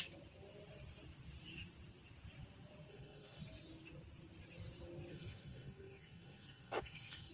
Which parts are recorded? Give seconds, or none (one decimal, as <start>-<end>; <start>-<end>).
0.0-2.9; 3.4-5.1